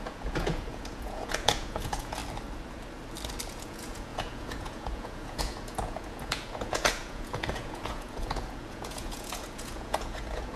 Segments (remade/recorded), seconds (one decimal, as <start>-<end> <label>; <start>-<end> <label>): 0.0-2.2 remade; 2.2-3.5 recorded; 3.5-10.6 remade